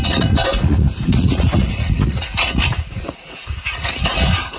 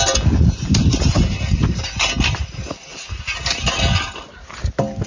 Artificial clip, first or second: first